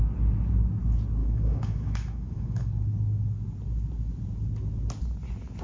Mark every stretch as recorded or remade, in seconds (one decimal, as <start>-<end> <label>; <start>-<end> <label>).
0.0-1.2 recorded; 1.2-2.7 remade; 2.7-5.6 recorded